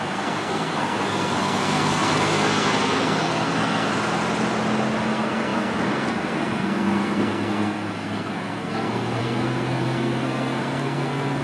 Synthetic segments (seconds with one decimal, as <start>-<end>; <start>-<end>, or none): 0.0-3.9; 5.0-11.4